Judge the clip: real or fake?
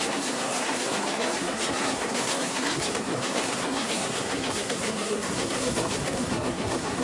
fake